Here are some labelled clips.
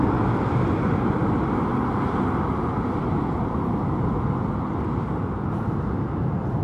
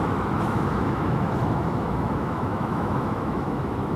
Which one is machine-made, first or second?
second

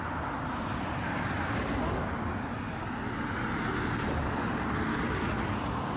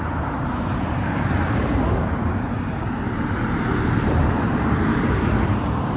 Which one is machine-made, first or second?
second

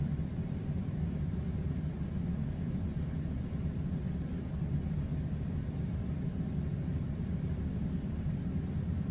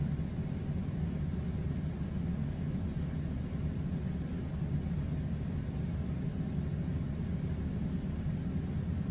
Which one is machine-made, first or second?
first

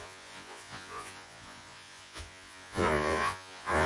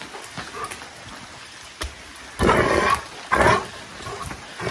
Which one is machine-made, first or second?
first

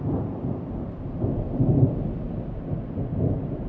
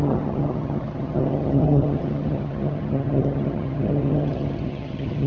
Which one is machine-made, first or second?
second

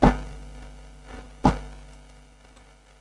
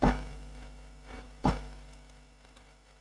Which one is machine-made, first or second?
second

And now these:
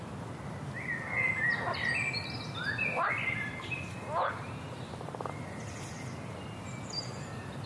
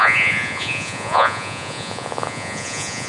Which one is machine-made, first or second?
second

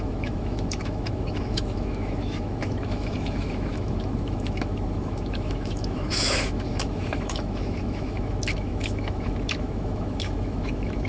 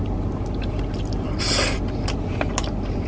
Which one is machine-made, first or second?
first